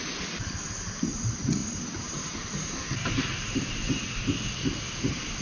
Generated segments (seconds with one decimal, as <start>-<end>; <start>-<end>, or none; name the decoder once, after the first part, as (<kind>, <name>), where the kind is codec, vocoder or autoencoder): none